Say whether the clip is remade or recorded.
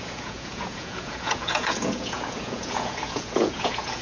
remade